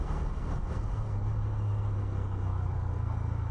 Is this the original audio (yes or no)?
no